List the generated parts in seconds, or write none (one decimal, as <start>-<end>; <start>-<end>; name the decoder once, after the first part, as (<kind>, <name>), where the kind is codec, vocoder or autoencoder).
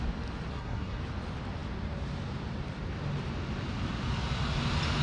0.5-1.0 (codec, SNAC)